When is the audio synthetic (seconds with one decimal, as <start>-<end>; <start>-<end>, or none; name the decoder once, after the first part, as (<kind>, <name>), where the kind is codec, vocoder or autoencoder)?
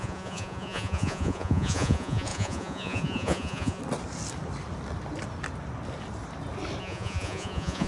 0.0-3.8 (vocoder, Vocos); 6.8-7.9